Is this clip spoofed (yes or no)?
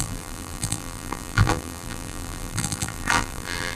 yes